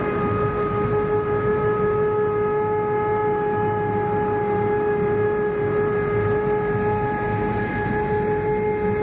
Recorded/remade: recorded